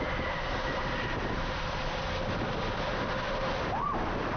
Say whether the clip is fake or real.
real